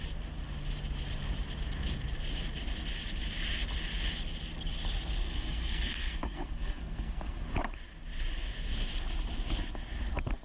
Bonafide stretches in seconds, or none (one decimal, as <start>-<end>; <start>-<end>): 0.0-5.2; 7.4-10.4